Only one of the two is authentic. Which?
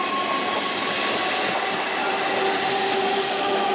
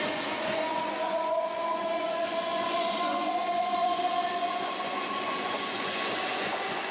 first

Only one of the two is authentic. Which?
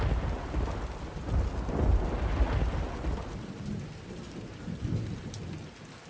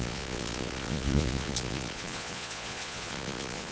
first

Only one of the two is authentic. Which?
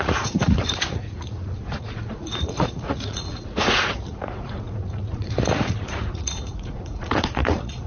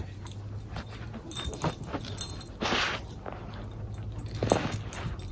second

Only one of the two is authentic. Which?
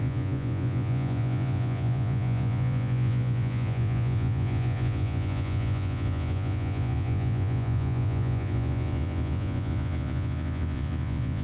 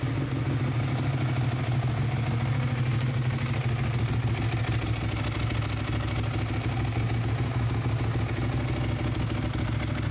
second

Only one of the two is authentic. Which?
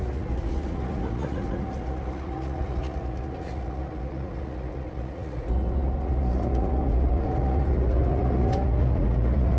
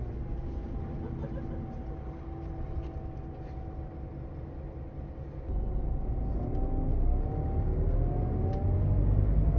second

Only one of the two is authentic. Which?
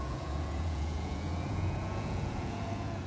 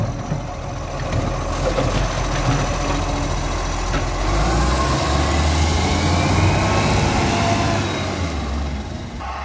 second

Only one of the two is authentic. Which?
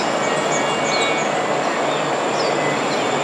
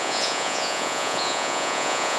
first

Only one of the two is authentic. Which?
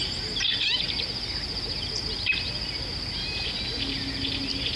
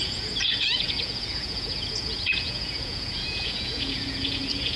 first